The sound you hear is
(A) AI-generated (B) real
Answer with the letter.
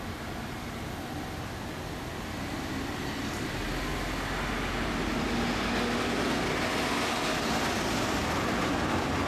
B